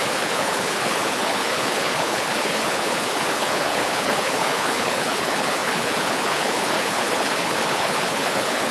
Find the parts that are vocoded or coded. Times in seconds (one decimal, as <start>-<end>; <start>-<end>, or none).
0.0-8.7